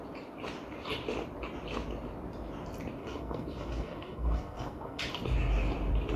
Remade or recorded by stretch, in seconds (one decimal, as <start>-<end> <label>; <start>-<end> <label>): 0.0-3.0 recorded; 3.0-5.0 remade; 5.0-6.2 recorded